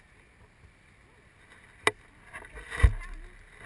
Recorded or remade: recorded